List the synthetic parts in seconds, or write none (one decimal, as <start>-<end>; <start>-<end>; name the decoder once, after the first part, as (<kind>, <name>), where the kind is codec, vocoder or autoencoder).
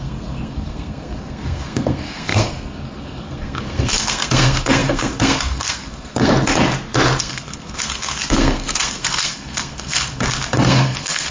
0.0-6.3 (codec, SNAC); 7.2-11.3